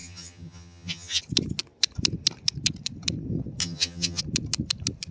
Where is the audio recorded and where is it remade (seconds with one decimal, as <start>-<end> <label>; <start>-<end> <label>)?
0.0-1.2 remade; 1.2-3.6 recorded; 3.6-4.2 remade; 4.2-5.1 recorded